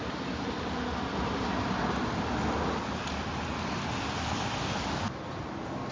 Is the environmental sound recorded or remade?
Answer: recorded